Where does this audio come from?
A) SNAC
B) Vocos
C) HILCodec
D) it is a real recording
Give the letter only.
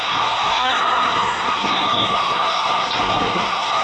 A